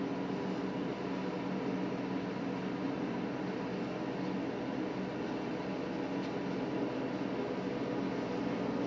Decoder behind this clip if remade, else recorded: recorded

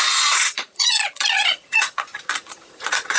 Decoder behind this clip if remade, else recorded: remade, vocoder, Vocos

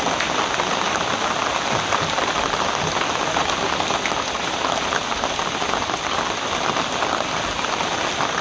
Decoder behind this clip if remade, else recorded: recorded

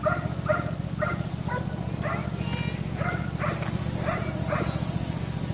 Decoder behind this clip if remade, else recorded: recorded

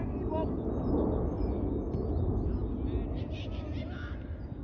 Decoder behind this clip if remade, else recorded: recorded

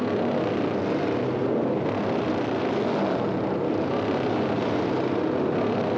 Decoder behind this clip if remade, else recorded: recorded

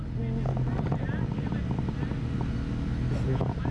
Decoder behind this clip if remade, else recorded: recorded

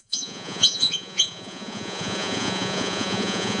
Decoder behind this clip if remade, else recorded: remade, vocoder, Vocos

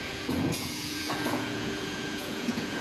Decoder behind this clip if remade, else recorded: remade, vocoder, Vocos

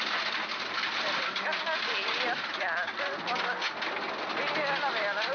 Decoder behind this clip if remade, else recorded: recorded